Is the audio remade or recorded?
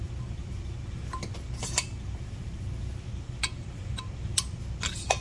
recorded